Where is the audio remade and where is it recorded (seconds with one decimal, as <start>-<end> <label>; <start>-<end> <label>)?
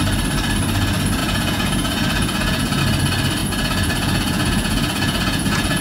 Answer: 0.0-1.2 recorded; 1.2-2.8 remade; 2.8-3.4 recorded; 3.4-5.8 remade